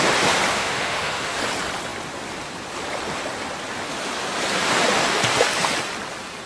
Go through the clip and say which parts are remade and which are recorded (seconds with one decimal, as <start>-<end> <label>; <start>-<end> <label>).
0.0-0.5 recorded; 0.5-1.4 remade; 1.4-6.5 recorded